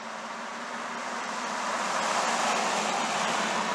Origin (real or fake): fake